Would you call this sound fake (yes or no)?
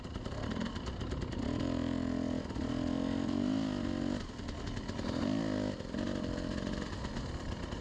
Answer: no